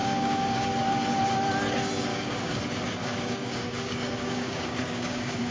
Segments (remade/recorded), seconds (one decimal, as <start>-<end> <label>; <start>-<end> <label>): 0.0-0.7 remade; 0.7-2.1 recorded; 2.1-2.6 remade; 2.6-3.0 recorded; 3.0-5.5 remade